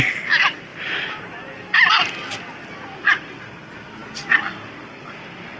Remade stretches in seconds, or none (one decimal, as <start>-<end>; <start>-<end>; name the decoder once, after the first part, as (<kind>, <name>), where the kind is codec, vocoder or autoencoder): none